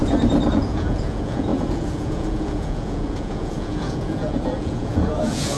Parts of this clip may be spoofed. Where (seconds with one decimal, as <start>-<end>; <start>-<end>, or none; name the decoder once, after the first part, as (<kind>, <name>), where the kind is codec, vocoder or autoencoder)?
0.5-5.6 (vocoder, Vocos)